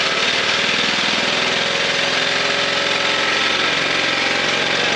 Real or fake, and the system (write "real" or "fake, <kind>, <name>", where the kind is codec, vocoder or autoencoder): real